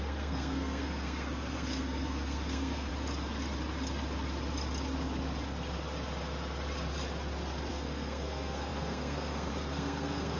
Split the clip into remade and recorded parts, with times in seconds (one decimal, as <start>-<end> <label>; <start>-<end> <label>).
0.0-2.9 remade; 2.9-7.7 recorded; 7.7-10.4 remade